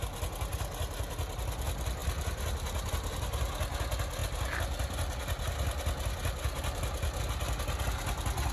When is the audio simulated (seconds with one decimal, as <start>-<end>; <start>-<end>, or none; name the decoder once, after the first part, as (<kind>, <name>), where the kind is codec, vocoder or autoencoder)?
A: none